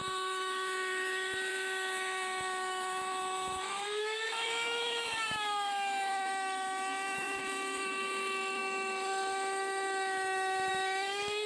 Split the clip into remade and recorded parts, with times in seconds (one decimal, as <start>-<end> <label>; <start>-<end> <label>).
0.0-11.5 remade